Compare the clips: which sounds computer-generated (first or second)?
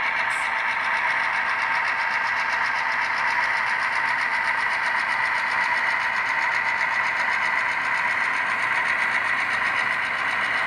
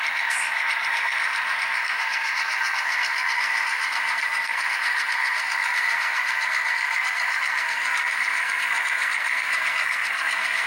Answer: second